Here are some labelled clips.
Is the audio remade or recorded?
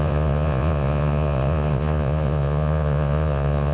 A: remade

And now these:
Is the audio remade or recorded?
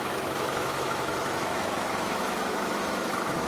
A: remade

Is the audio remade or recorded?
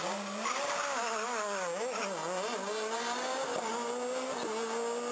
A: recorded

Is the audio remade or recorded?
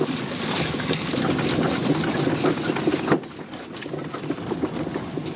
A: recorded